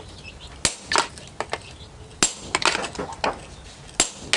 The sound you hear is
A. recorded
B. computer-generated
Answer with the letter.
A